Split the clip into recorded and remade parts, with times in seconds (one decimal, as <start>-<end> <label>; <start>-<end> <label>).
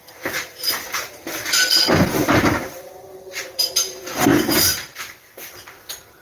0.0-3.7 remade; 3.7-4.3 recorded; 4.3-5.0 remade; 5.0-6.2 recorded